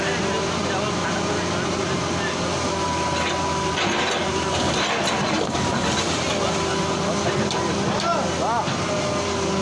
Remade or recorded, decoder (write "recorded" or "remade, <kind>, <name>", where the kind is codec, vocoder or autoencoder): recorded